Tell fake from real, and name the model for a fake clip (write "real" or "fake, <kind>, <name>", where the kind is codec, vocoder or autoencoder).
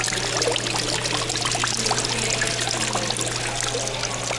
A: real